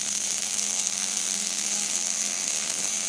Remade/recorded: remade